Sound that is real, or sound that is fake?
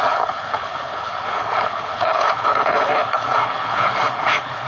fake